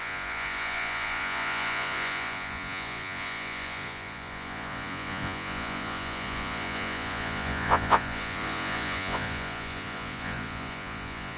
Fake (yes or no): yes